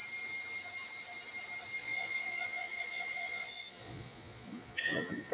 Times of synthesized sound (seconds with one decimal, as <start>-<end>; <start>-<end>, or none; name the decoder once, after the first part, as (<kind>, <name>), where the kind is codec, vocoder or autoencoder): 1.8-5.3 (vocoder, Vocos)